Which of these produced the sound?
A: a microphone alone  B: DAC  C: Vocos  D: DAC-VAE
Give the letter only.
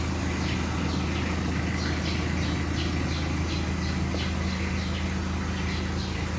A